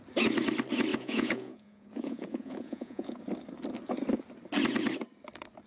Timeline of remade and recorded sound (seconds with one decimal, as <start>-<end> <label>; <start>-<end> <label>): 0.0-0.9 recorded; 0.9-3.2 remade; 3.2-5.7 recorded